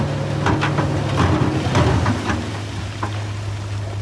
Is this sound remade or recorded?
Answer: recorded